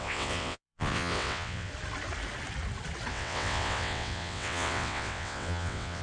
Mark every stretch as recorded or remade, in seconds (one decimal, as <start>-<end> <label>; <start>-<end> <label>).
0.0-1.7 remade; 1.7-3.1 recorded; 3.1-6.0 remade